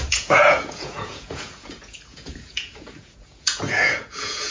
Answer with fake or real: fake